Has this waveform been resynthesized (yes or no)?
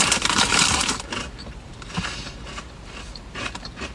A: yes